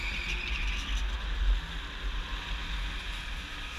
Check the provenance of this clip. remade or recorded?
recorded